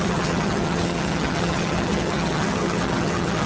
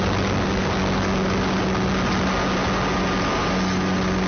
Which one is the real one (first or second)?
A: second